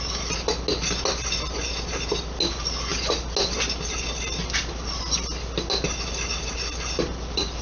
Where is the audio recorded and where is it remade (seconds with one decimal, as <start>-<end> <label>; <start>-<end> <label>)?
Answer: 0.0-7.6 recorded